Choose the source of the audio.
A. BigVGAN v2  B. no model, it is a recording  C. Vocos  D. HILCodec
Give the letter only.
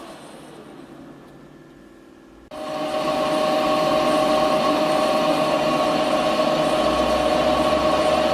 B